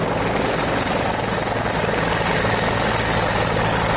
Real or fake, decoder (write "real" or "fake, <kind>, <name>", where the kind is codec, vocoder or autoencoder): real